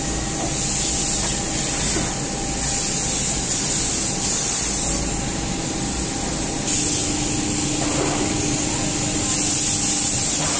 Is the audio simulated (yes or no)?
no